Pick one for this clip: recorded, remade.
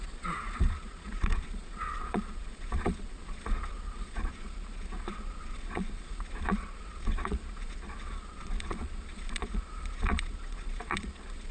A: remade